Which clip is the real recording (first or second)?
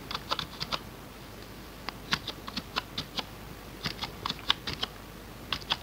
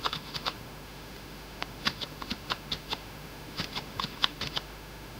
first